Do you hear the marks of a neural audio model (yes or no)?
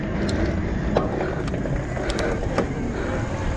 no